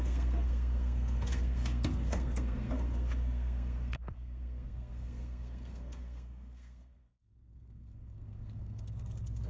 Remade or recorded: remade